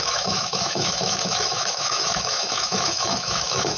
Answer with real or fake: fake